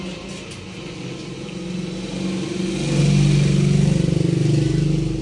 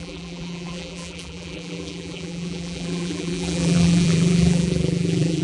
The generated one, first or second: second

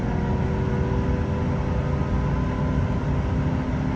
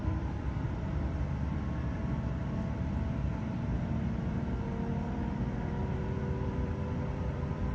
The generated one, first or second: second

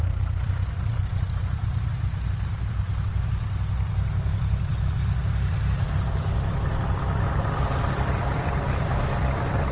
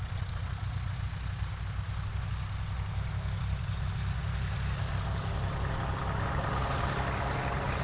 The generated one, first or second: first